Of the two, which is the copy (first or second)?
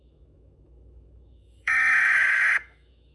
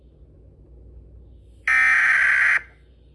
first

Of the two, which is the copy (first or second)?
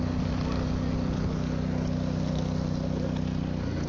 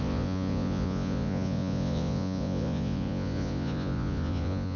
second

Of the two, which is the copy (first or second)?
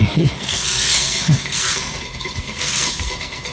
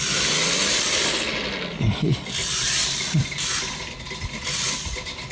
first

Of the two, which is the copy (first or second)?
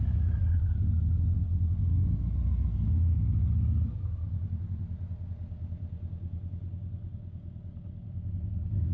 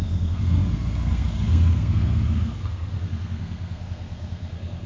second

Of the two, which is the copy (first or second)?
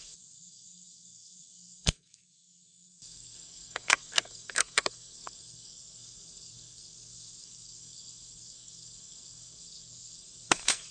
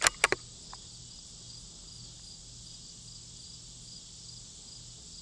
first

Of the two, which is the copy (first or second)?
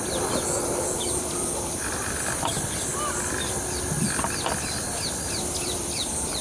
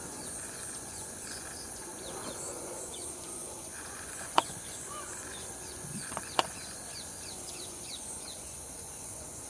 second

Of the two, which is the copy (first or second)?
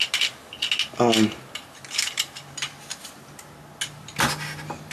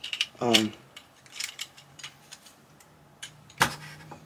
second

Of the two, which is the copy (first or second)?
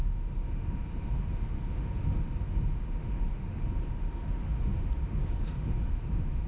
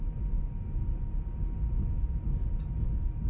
first